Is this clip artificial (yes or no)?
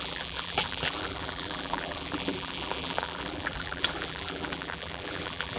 yes